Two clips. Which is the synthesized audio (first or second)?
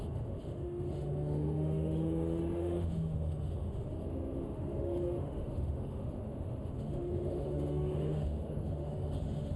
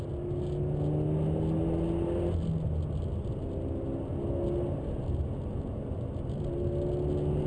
first